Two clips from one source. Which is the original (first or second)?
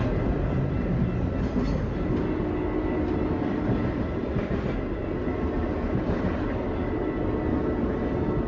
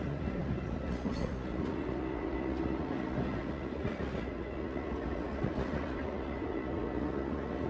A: first